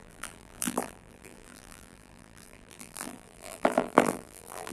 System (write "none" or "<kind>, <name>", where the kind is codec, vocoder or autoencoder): vocoder, BigVGAN v2